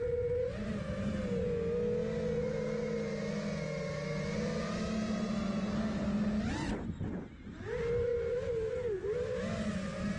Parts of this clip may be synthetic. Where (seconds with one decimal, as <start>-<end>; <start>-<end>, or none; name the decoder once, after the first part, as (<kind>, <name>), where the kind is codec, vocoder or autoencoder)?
none